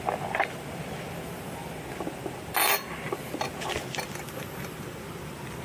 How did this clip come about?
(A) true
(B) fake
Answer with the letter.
A